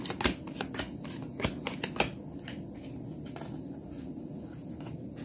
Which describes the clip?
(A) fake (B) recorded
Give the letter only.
B